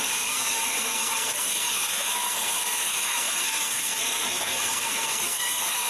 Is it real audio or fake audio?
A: fake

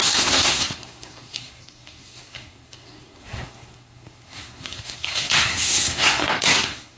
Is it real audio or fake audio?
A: fake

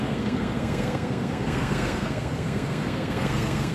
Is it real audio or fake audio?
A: fake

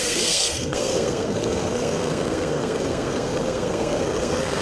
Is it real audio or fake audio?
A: fake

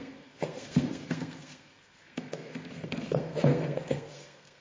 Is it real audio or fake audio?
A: fake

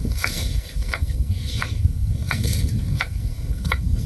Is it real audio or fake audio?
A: fake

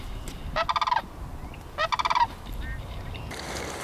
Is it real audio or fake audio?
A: real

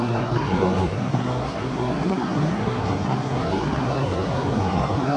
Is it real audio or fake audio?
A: fake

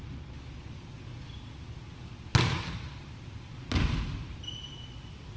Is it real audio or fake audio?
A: real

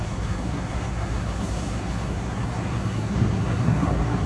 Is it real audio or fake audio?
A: fake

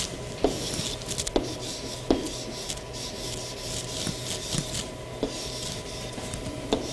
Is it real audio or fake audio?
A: real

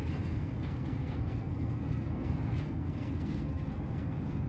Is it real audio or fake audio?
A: fake